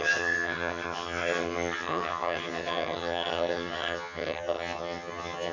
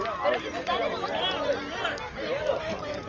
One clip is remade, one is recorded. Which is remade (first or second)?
first